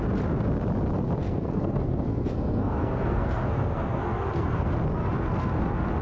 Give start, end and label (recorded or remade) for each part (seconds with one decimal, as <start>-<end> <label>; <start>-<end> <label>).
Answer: 0.0-1.2 recorded; 1.2-4.7 remade; 4.7-6.0 recorded

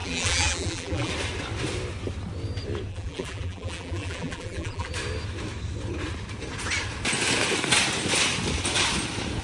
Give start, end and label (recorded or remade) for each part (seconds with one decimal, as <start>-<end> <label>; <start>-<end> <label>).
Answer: 0.0-1.1 remade; 1.1-2.9 recorded; 2.9-4.9 remade; 4.9-9.4 recorded